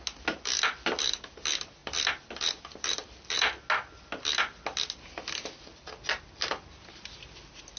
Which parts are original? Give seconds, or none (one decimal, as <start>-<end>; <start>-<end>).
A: 0.0-7.8